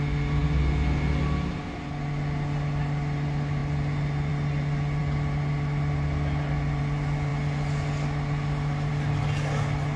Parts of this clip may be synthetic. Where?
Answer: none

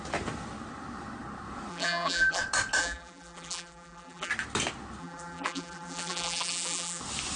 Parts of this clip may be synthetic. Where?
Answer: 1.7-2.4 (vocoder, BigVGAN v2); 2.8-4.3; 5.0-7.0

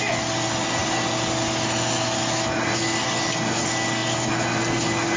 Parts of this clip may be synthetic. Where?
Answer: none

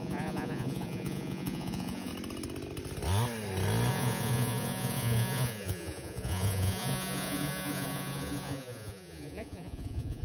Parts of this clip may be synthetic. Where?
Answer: 0.0-2.1 (vocoder, Vocos); 3.9-10.2